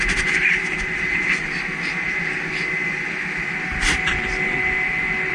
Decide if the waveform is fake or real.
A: fake